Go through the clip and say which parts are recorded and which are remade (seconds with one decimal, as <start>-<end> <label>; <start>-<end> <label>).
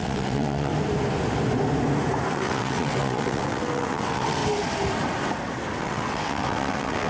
0.0-0.7 remade; 0.7-2.3 recorded; 2.3-4.4 remade; 4.4-5.8 recorded; 5.8-7.1 remade